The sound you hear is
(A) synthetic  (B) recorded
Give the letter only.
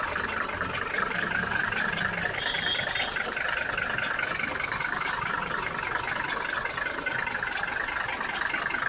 B